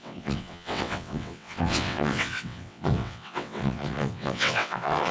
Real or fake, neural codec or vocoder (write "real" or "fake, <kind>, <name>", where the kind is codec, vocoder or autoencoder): fake, vocoder, WaveNeXt